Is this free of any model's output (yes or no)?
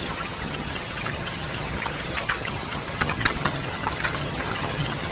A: no